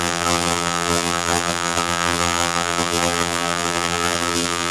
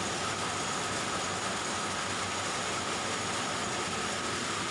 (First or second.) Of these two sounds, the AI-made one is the first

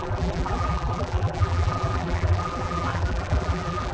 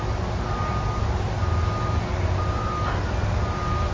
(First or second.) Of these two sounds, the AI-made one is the first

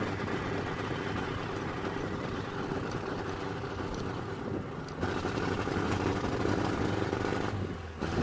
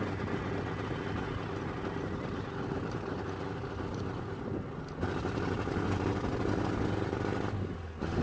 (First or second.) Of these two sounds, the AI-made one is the first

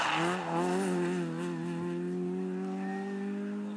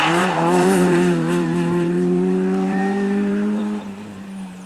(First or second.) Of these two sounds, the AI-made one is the second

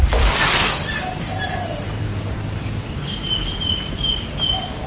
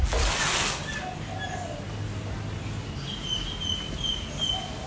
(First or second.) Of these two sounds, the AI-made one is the first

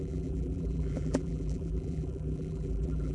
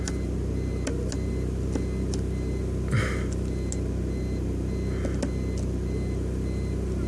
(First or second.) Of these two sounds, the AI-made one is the first